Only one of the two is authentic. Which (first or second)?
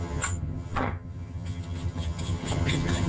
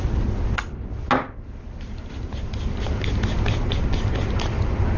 second